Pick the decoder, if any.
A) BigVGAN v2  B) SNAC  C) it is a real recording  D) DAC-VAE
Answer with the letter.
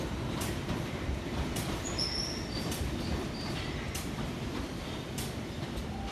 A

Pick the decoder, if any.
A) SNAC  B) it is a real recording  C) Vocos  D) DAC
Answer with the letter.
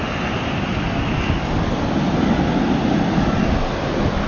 B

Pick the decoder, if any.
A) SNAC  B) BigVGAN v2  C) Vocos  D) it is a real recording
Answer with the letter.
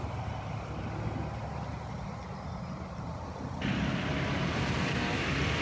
D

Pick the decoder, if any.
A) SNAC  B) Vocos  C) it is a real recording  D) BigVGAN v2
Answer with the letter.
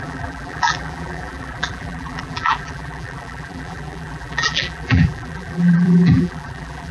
D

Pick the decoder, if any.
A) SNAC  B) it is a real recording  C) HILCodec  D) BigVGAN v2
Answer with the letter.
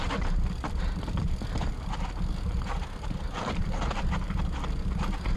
B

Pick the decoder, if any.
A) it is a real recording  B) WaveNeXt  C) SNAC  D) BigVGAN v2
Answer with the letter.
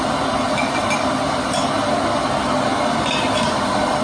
A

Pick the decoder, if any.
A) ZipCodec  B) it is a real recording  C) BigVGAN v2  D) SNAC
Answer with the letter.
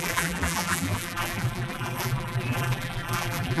C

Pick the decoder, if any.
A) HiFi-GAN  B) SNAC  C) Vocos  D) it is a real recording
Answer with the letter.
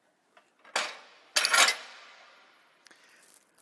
D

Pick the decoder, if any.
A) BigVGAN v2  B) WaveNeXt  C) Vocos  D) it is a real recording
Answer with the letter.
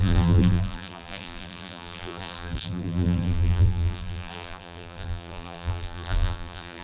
A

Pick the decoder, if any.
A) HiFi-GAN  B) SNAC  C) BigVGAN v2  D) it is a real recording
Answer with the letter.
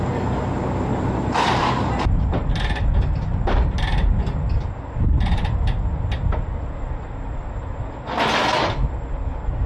D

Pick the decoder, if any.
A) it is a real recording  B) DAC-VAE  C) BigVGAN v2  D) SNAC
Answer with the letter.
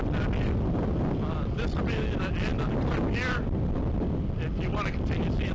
A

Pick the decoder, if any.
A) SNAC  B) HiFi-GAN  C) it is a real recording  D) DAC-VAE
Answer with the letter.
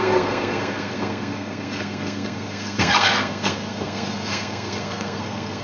A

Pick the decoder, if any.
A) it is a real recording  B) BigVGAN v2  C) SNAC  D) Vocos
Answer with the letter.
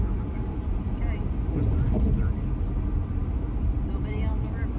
A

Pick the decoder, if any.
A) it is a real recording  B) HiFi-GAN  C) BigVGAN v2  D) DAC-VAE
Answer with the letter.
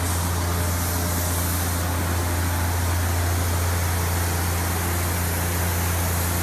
A